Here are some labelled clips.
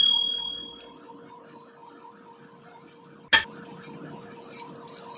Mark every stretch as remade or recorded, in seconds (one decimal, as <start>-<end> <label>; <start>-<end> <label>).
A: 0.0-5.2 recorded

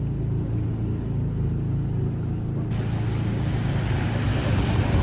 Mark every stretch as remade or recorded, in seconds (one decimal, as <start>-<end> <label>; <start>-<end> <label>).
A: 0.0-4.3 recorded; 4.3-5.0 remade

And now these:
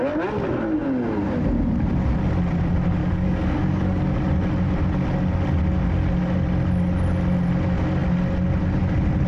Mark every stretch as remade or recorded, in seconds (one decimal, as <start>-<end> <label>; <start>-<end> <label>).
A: 0.0-3.0 recorded; 3.0-4.2 remade; 4.2-9.3 recorded

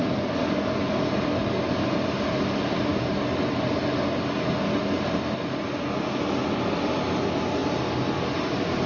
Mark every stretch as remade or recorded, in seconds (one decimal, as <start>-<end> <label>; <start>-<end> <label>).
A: 0.0-8.9 recorded